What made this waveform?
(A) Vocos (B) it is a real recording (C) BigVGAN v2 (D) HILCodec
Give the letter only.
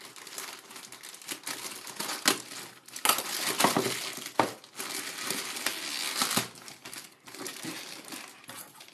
B